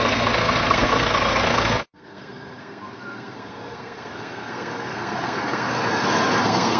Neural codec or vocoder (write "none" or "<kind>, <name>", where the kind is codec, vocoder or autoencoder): codec, SNAC